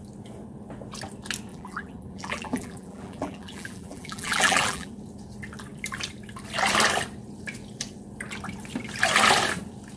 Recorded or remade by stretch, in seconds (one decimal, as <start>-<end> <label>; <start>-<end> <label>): 0.0-1.5 recorded; 1.5-4.9 remade; 4.9-10.0 recorded